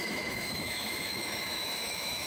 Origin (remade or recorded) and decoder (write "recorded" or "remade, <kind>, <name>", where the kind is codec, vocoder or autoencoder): remade, autoencoder, DAC-VAE